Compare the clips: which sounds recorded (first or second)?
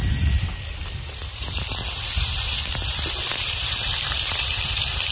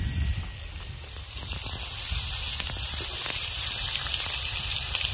second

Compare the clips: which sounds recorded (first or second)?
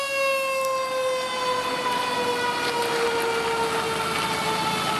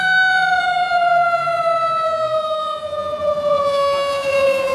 first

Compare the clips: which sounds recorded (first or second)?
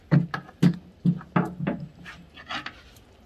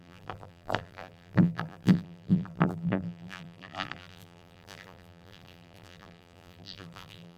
first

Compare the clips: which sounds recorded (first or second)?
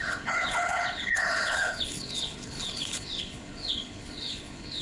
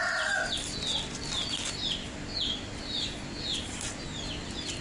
second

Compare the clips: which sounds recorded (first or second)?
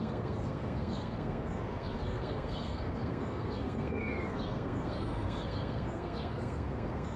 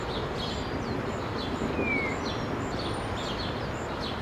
second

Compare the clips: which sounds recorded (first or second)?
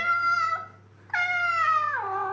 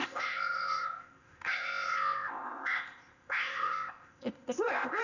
first